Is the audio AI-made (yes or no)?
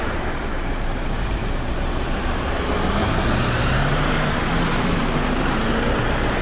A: yes